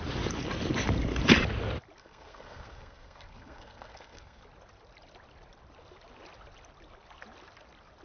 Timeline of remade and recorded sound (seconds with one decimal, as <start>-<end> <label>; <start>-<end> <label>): 0.0-2.0 recorded; 2.0-4.4 remade; 4.4-8.0 recorded